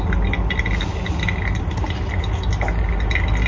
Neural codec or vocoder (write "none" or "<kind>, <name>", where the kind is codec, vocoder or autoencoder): none